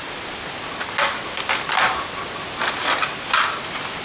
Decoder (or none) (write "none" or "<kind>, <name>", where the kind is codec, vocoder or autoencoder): none